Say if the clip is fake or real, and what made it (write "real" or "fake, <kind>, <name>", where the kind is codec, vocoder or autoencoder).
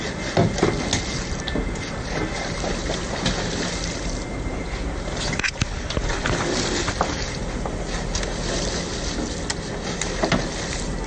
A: real